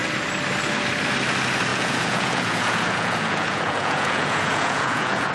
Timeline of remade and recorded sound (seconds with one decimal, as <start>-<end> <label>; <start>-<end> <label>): 0.0-1.7 recorded; 1.7-5.3 remade